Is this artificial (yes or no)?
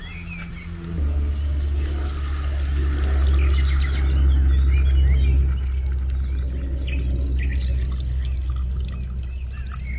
no